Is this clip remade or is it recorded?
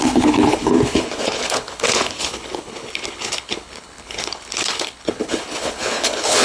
remade